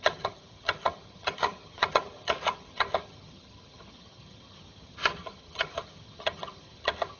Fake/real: fake